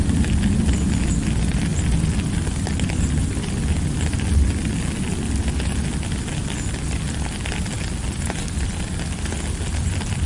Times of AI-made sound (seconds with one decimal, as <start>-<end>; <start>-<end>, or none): none